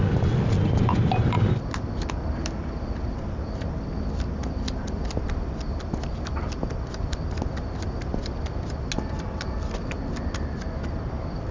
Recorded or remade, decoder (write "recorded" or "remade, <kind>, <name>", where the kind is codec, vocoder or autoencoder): recorded